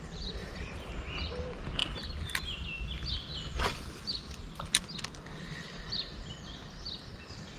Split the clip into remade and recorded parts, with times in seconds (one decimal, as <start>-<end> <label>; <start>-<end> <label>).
0.0-7.6 recorded